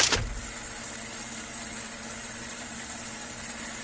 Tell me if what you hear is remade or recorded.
recorded